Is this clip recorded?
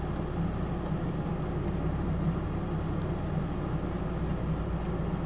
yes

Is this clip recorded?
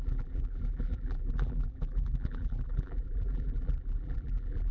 no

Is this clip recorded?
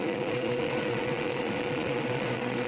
no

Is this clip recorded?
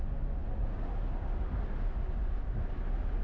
yes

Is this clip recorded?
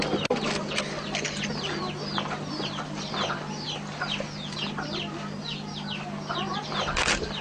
yes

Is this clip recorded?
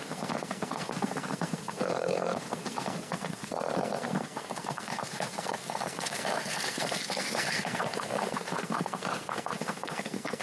no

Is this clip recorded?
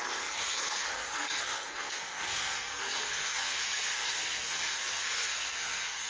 no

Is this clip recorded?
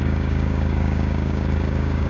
no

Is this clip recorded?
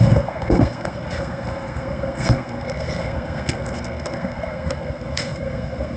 no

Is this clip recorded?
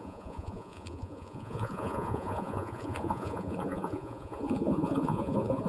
no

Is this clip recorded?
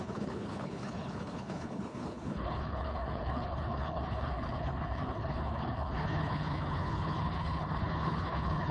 no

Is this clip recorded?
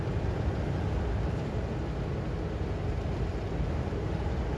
yes